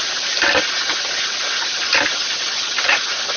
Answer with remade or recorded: recorded